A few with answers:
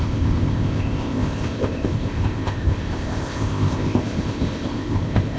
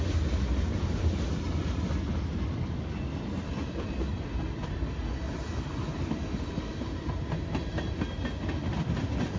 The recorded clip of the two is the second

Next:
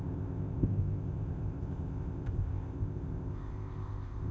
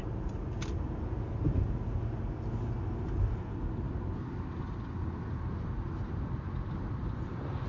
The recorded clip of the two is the second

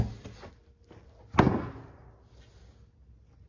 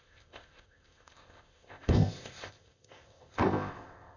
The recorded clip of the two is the first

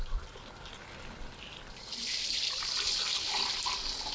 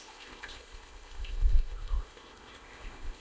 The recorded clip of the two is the first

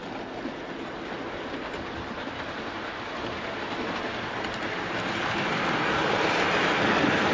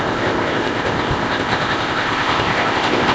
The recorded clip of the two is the first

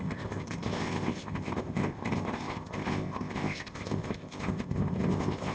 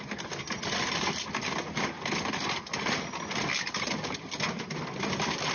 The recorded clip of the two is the second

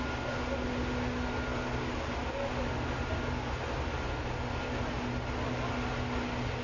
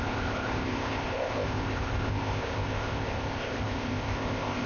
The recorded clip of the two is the first